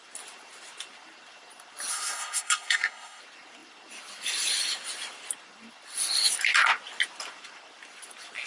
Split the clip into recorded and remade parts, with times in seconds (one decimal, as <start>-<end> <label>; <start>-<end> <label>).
0.0-1.9 recorded; 1.9-3.2 remade; 3.2-8.5 recorded